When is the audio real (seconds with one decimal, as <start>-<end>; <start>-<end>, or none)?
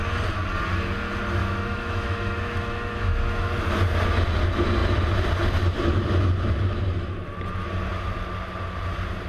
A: 0.0-1.4; 3.5-9.3